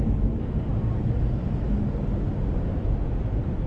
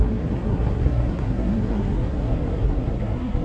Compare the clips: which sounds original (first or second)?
first